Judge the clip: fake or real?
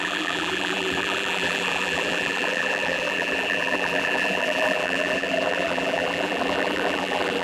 fake